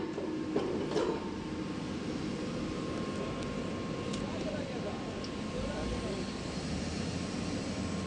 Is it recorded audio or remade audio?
recorded